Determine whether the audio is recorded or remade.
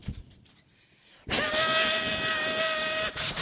recorded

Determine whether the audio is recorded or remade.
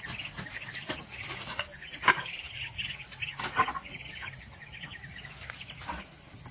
recorded